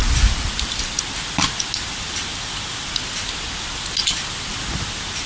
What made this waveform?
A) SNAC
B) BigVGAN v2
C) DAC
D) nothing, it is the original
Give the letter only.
D